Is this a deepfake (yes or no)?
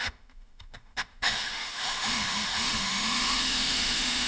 yes